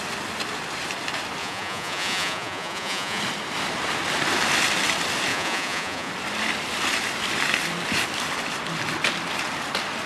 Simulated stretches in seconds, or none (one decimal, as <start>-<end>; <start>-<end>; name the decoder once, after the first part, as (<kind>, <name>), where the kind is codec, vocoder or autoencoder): 1.4-3.2 (vocoder, Vocos); 5.3-6.1